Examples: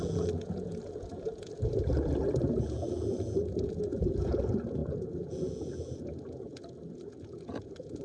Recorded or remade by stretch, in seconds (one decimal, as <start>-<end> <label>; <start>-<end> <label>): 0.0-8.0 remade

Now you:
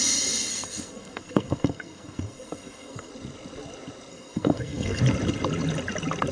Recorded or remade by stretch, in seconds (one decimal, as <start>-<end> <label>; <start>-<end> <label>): 0.0-0.5 recorded; 0.5-3.1 remade; 3.1-4.1 recorded; 4.1-5.0 remade; 5.0-6.3 recorded

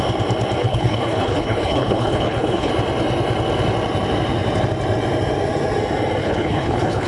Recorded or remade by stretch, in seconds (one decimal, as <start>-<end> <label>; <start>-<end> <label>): 0.0-0.6 recorded; 0.6-2.7 remade; 2.7-6.2 recorded; 6.2-7.1 remade

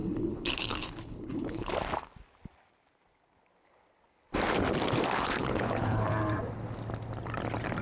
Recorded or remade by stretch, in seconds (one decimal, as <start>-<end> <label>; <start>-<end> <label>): 0.0-1.7 remade; 1.7-5.4 recorded; 5.4-6.1 remade; 6.1-7.8 recorded

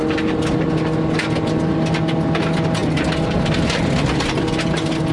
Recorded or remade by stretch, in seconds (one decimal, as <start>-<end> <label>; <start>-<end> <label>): 0.0-2.8 recorded; 2.8-3.4 remade; 3.4-5.1 recorded

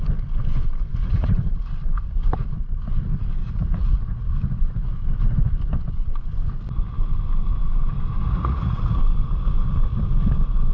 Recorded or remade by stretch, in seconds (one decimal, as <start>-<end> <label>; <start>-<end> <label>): 0.0-0.9 recorded; 0.9-1.5 remade; 1.5-3.4 recorded; 3.4-4.3 remade; 4.3-8.2 recorded; 8.2-9.0 remade; 9.0-10.7 recorded

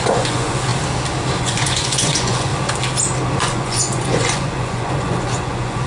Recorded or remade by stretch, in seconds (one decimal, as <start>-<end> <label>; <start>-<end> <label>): 0.0-0.7 remade; 0.7-1.4 recorded; 1.4-2.5 remade; 2.5-3.4 recorded; 3.4-5.9 remade